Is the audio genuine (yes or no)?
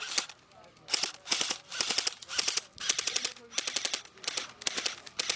yes